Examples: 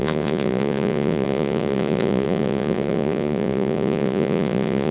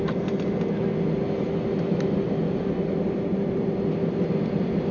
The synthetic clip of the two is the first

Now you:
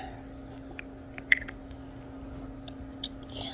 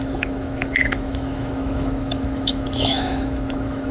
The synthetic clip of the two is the second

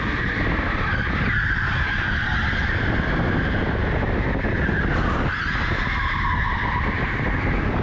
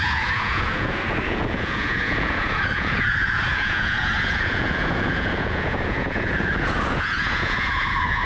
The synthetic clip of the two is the second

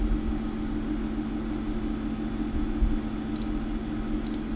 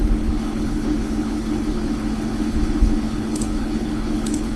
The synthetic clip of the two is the second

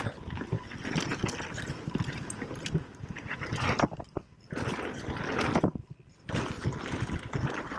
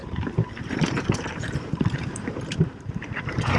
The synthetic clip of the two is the second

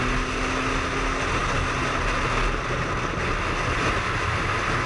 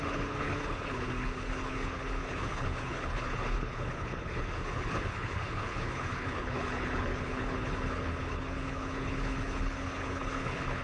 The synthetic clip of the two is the second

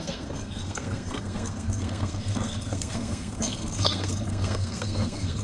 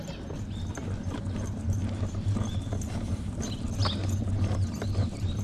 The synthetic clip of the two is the first